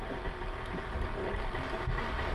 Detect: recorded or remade recorded